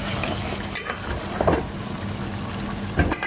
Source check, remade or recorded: recorded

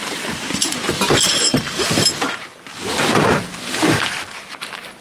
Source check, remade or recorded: remade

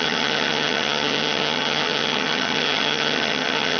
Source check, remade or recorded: remade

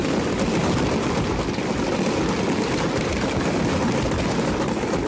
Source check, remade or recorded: recorded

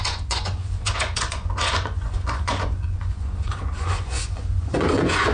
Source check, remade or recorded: remade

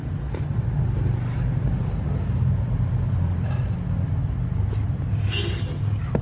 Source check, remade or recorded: recorded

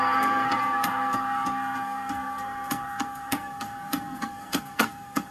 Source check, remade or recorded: remade